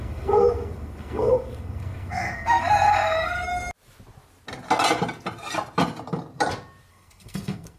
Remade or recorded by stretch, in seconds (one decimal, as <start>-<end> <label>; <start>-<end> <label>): 0.0-3.5 remade; 3.5-6.9 recorded; 6.9-7.8 remade